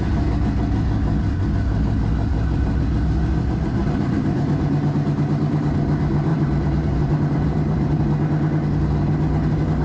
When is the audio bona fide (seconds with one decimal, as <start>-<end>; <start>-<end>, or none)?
0.0-2.3; 2.8-3.8; 4.5-6.3; 8.0-9.8